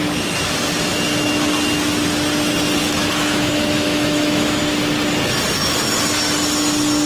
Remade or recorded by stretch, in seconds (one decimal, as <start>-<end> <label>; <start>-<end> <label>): 0.0-2.8 recorded; 2.8-4.6 remade; 4.6-7.1 recorded